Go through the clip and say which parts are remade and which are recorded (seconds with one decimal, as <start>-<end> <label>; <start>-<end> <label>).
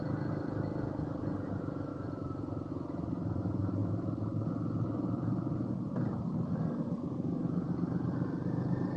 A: 0.0-9.0 recorded